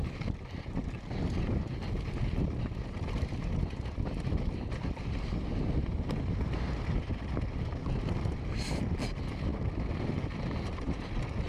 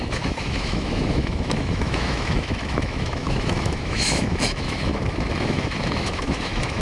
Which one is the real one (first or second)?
first